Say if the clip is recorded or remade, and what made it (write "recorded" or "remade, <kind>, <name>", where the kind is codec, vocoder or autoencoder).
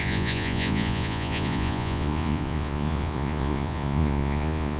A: remade, vocoder, Vocos